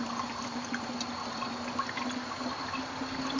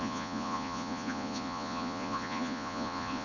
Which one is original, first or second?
first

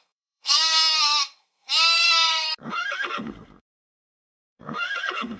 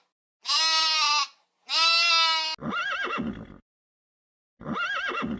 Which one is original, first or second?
second